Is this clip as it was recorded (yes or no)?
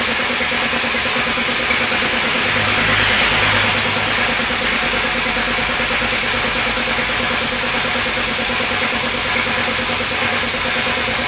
yes